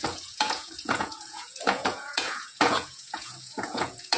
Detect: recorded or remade remade